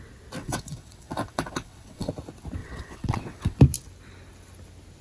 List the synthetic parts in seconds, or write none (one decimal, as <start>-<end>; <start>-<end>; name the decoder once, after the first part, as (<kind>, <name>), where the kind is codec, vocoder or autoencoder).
0.4-2.1 (vocoder, WaveNeXt); 2.6-3.6